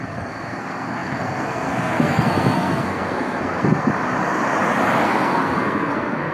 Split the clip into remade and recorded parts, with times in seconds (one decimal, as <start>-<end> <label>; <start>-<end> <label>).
0.0-3.9 remade; 3.9-5.0 recorded; 5.0-6.3 remade